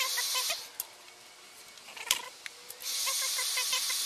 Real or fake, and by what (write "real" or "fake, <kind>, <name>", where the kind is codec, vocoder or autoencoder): real